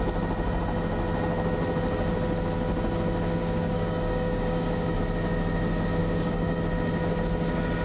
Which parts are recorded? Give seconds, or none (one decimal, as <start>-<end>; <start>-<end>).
0.0-3.4; 5.0-6.0; 6.6-7.8